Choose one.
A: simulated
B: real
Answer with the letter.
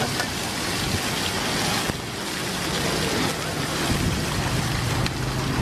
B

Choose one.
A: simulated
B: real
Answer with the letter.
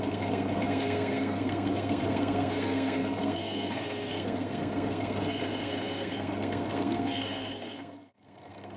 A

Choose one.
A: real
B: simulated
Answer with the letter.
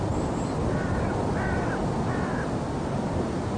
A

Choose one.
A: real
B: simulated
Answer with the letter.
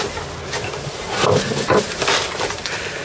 A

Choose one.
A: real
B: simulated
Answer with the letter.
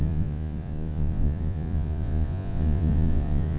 B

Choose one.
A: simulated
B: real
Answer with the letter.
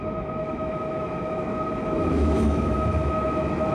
A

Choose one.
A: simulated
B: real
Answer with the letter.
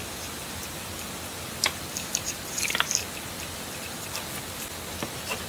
B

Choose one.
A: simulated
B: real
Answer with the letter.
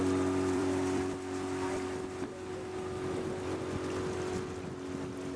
A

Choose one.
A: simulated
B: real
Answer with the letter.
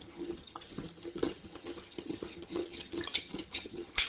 A